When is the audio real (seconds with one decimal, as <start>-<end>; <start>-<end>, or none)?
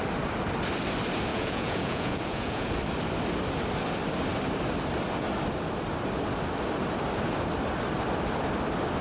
0.0-1.3; 2.7-9.0